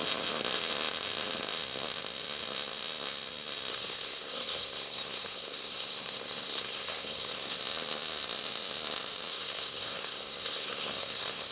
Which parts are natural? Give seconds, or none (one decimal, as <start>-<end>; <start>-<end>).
0.0-3.7; 7.6-9.3